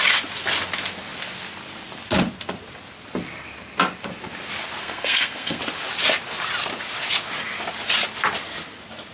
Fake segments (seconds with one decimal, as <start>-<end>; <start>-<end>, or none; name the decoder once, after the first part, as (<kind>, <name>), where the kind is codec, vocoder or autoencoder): 4.8-5.6 (codec, SNAC)